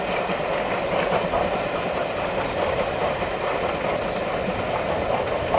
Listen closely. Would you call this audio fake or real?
real